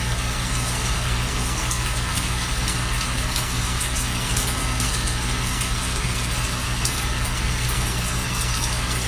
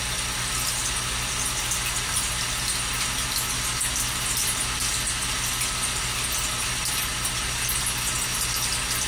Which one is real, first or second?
second